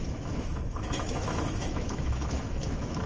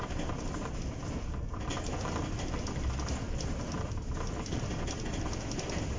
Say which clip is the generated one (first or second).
first